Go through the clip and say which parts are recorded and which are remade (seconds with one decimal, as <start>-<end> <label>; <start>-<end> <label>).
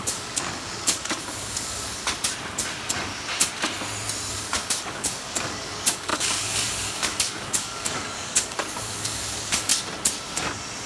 0.0-2.0 remade; 2.0-4.3 recorded; 4.3-9.7 remade; 9.7-10.9 recorded